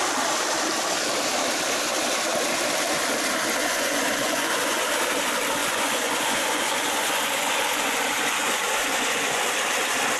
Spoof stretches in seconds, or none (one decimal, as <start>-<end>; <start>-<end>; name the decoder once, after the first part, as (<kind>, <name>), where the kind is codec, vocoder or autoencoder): 3.6-4.9 (vocoder, Vocos); 5.6-9.4